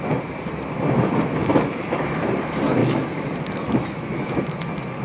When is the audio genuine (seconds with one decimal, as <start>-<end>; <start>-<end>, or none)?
0.0-1.4; 2.3-2.8; 4.4-5.0